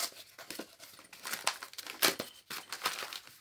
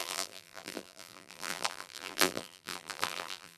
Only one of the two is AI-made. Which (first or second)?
second